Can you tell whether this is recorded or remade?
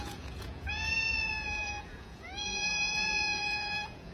remade